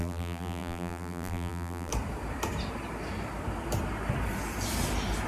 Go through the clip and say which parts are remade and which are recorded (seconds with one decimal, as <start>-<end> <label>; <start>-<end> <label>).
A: 0.0-1.9 remade; 1.9-5.3 recorded